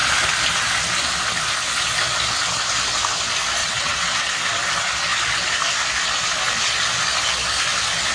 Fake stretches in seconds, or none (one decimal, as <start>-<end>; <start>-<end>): 3.6-4.3